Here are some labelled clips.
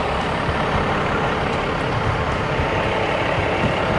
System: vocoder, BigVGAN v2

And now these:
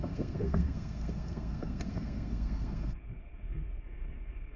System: codec, SNAC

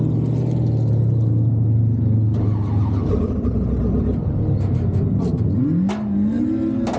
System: none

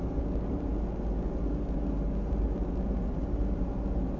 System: none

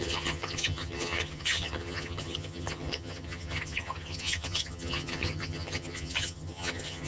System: vocoder, HiFi-GAN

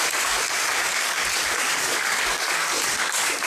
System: codec, DAC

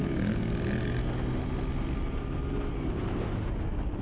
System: none